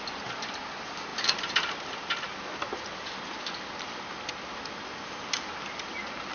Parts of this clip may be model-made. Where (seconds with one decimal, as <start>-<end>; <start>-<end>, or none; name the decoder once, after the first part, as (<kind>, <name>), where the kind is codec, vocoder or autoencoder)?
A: 0.0-2.3 (vocoder, BigVGAN v2); 3.4-6.3